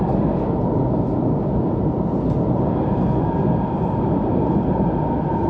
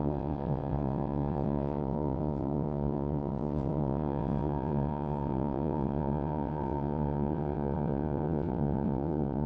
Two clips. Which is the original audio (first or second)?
first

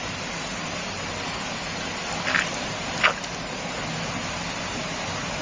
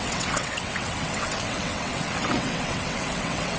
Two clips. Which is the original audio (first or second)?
first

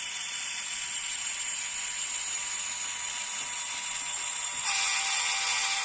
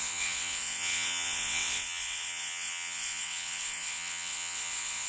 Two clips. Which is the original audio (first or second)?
first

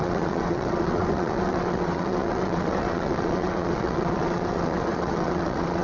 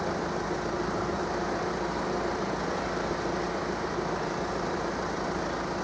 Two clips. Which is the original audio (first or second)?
second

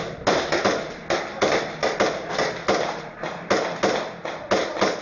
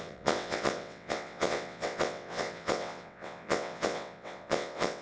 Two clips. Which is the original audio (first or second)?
first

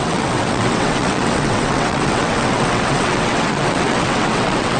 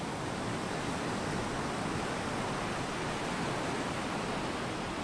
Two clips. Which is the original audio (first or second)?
second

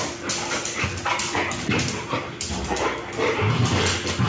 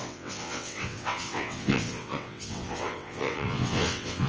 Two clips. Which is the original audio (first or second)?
first